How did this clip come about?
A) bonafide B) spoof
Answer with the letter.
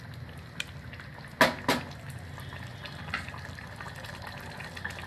A